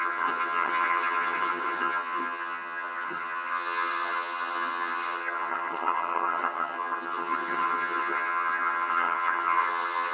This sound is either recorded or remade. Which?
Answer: remade